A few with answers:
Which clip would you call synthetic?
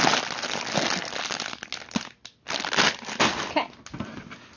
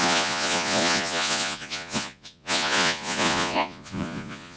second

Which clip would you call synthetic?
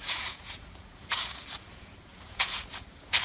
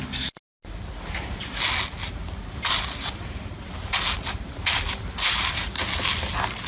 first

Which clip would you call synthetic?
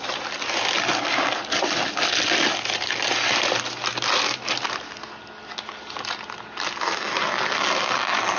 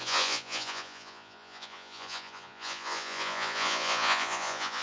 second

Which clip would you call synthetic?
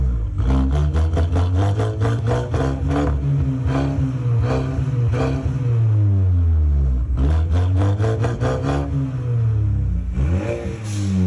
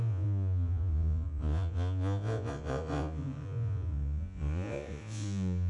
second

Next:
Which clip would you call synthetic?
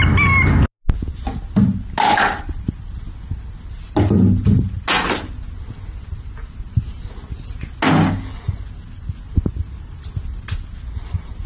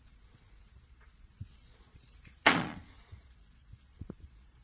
second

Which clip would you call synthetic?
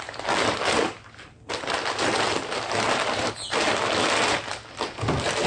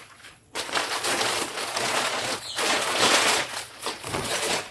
second